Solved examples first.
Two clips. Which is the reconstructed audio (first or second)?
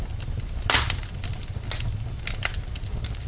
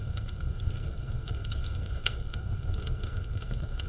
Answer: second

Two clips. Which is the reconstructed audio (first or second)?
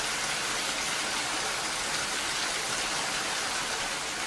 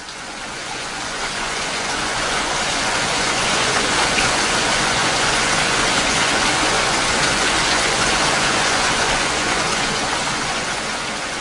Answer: second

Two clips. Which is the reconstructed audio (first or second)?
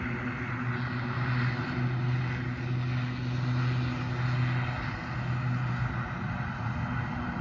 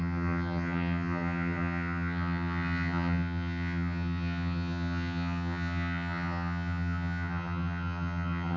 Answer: second